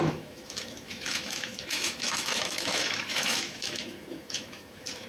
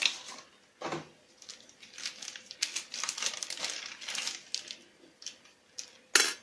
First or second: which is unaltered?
second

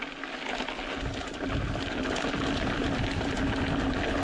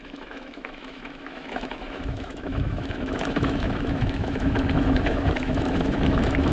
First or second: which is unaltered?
first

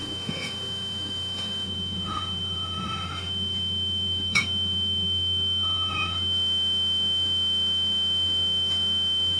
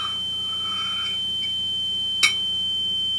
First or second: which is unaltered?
second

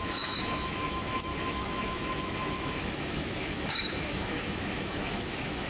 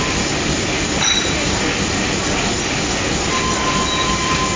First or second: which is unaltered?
second